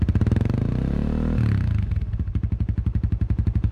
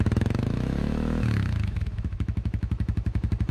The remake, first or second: second